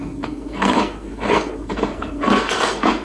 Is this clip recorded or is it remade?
remade